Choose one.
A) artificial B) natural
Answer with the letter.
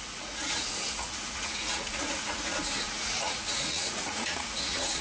A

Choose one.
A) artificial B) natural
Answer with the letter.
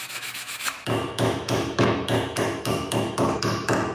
A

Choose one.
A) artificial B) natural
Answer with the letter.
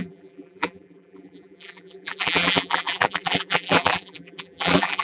A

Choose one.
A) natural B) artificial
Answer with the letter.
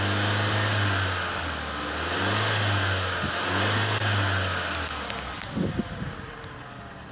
A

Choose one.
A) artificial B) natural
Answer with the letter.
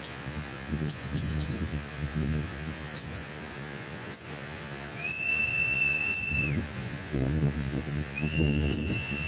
A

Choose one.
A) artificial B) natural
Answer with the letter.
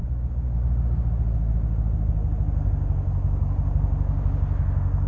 B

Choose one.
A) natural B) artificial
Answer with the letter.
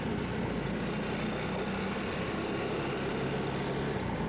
A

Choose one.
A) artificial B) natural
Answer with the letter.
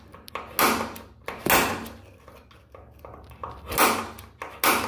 B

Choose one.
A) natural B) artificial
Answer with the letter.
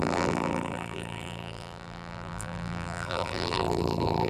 B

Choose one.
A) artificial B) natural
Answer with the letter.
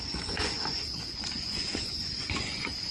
A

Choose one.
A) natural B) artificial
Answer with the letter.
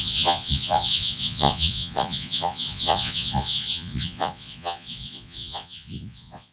B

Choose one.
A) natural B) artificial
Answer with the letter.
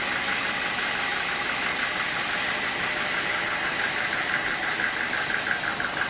A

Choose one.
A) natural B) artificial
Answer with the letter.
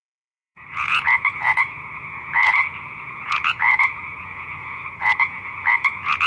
B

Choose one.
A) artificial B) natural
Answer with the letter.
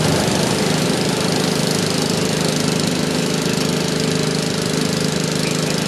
B